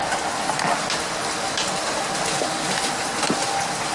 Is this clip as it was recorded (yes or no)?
yes